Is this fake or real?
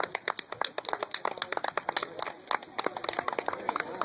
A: real